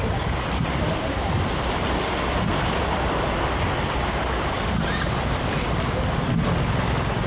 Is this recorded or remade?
recorded